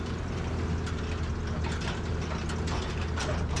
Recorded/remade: recorded